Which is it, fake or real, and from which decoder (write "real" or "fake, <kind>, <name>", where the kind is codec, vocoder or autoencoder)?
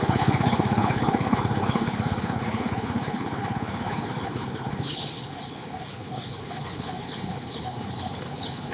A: fake, codec, HILCodec